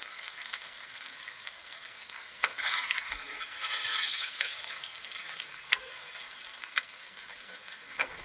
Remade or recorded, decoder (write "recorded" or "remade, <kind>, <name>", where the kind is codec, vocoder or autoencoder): remade, codec, SNAC